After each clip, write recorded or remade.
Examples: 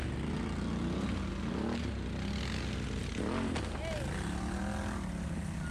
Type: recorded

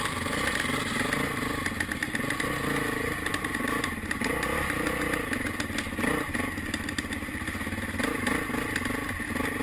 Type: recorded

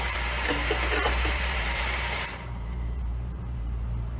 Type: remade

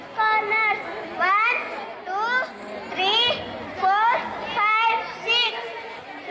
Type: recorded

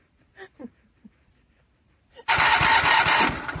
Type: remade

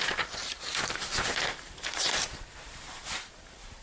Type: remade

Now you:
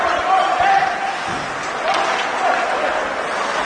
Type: recorded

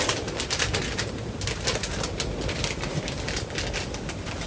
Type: recorded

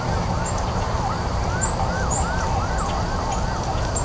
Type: recorded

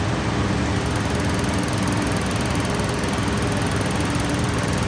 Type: recorded